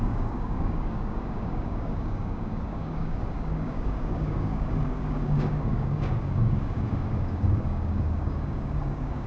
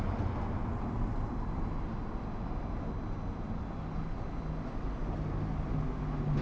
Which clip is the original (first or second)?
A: second